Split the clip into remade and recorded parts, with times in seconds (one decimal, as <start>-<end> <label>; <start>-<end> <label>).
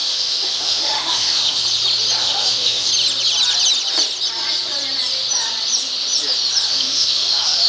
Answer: 0.0-1.6 remade; 1.6-2.2 recorded; 2.2-2.9 remade; 2.9-6.7 recorded; 6.7-7.7 remade